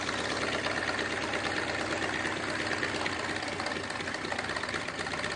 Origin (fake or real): fake